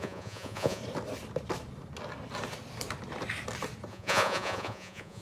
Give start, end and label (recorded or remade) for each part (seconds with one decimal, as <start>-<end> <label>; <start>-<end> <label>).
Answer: 0.0-0.8 remade; 0.8-3.9 recorded; 3.9-5.2 remade